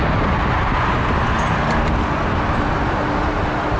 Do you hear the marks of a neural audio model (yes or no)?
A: no